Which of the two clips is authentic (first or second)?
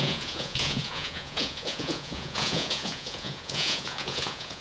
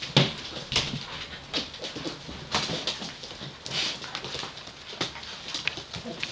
second